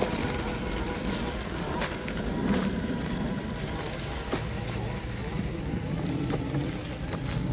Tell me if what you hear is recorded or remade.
recorded